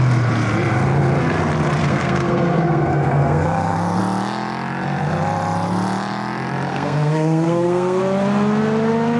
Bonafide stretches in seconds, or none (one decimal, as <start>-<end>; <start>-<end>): 0.0-1.8; 4.0-6.7; 8.0-9.2

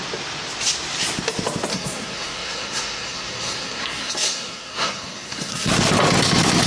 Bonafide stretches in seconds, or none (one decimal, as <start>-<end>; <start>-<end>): 0.0-1.7; 5.7-6.7